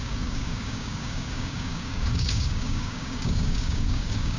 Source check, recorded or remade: remade